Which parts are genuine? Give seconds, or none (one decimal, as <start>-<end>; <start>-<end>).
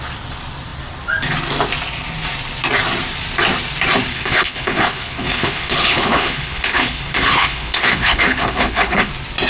0.0-4.1; 9.1-9.5